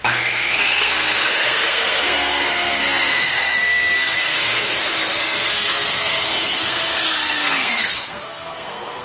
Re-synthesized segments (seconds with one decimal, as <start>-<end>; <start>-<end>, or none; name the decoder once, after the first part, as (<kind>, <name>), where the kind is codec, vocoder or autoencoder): 0.0-9.0 (codec, SNAC)